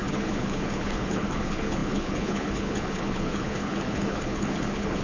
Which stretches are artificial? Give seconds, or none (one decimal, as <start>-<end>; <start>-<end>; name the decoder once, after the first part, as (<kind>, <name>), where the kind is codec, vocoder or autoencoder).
0.0-5.0 (codec, HILCodec)